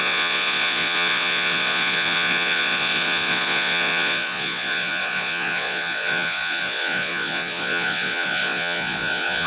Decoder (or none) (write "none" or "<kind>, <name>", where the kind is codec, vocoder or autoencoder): vocoder, Vocos